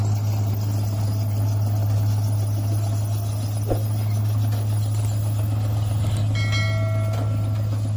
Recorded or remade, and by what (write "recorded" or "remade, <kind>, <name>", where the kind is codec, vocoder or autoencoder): recorded